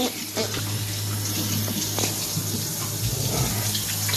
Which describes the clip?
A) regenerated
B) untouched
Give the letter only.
B